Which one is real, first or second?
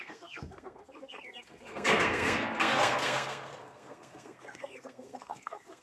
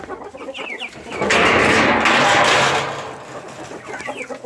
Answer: second